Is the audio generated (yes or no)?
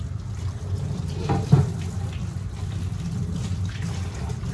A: no